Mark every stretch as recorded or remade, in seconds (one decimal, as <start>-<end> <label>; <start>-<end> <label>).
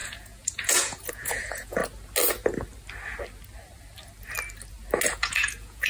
0.0-1.8 remade; 1.8-5.1 recorded; 5.1-5.9 remade